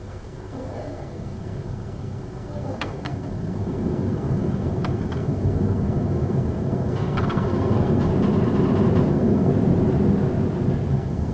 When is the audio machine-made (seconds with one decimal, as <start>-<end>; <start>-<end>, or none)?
0.0-8.1; 9.1-9.5; 10.9-11.3